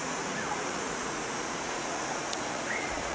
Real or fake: fake